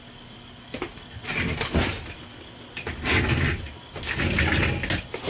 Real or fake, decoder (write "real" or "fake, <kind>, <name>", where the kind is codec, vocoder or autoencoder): real